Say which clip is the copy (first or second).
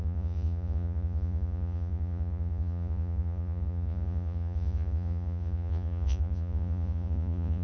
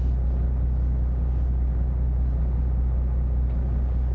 first